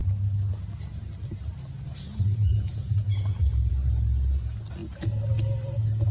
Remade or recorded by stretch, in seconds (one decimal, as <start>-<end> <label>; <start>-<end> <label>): 0.0-6.1 recorded